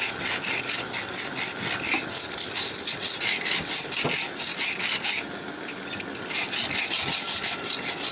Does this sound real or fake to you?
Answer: real